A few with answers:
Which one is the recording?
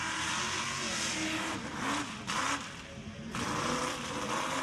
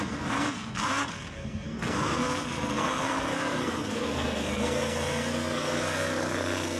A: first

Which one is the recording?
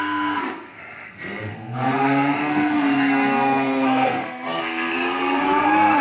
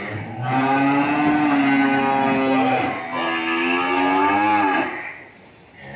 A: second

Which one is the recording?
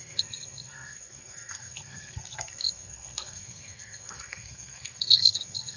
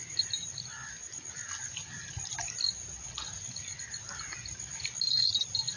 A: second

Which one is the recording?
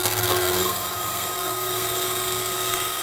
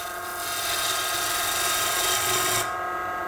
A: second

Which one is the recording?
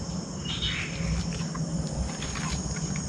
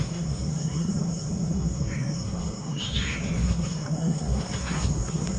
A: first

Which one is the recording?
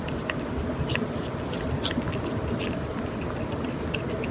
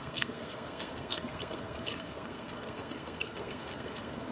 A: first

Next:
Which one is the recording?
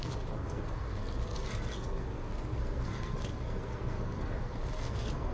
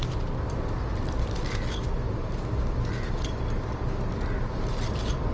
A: second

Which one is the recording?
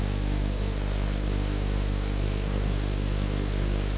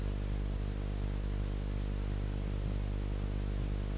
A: second